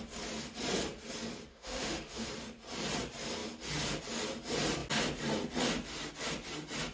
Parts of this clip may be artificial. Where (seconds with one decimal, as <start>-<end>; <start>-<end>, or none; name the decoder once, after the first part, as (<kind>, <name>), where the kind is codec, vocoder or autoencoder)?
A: 1.5-2.3 (autoencoder, DAC-VAE)